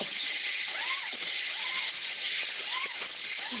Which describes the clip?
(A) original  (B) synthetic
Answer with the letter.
B